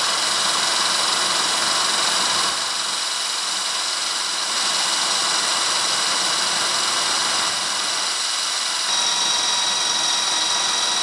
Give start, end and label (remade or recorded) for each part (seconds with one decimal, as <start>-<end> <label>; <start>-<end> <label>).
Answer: 0.0-11.0 recorded